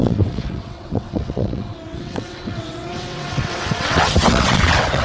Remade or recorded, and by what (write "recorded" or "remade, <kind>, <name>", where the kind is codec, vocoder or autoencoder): remade, vocoder, WaveNeXt